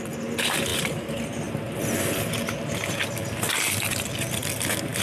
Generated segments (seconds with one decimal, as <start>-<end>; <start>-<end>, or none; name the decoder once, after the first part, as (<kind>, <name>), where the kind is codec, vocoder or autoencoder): none